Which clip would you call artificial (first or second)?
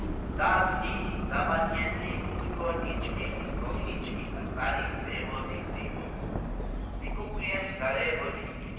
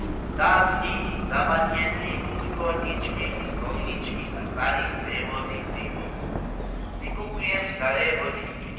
first